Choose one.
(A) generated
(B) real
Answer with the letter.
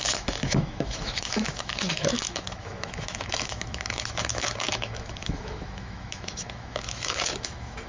A